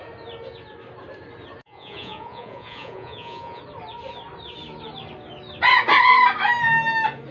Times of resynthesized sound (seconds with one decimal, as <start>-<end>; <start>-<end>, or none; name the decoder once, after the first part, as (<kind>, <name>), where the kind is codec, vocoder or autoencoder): 1.6-3.6 (vocoder, Vocos)